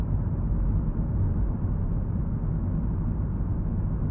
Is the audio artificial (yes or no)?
no